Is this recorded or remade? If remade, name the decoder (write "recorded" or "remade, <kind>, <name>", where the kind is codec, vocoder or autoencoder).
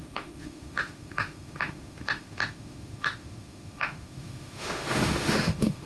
remade, autoencoder, DAC-VAE